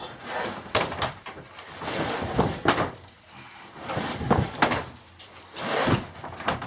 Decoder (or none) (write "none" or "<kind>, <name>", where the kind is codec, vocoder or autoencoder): none